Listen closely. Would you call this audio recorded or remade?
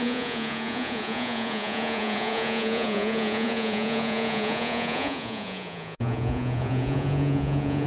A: remade